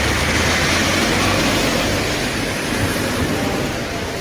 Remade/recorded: recorded